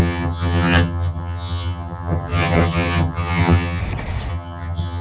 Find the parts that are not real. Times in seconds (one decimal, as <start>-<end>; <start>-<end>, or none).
0.0-3.8; 4.3-5.0